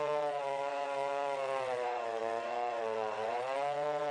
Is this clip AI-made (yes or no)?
yes